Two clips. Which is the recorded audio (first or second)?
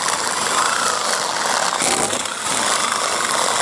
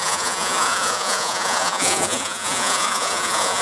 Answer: first